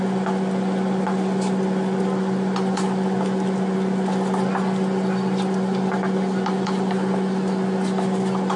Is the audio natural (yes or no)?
yes